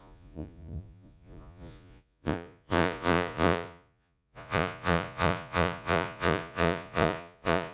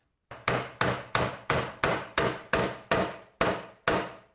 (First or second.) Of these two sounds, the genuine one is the second